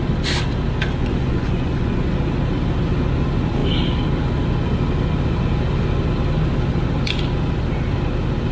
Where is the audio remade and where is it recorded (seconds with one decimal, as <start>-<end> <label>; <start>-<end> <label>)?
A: 0.0-1.0 recorded; 1.0-2.0 remade; 2.0-8.5 recorded